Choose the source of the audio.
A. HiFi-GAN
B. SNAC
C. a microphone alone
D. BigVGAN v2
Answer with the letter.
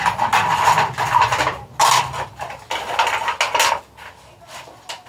C